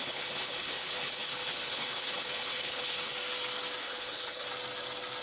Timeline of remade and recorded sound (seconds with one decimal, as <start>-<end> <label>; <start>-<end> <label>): 0.0-3.1 remade; 3.1-3.8 recorded; 3.8-4.5 remade; 4.5-5.2 recorded